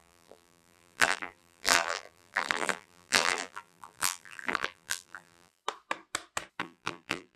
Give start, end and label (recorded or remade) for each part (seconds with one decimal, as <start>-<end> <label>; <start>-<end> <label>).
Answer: 0.0-5.6 remade; 5.6-6.6 recorded; 6.6-7.4 remade